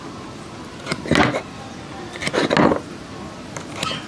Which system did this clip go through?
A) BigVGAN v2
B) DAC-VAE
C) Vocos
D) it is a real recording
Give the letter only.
D